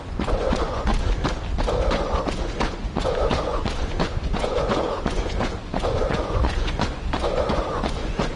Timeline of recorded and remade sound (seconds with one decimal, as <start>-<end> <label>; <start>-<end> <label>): 0.0-0.9 remade; 0.9-1.9 recorded; 1.9-8.4 remade